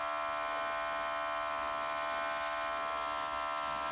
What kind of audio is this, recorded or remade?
recorded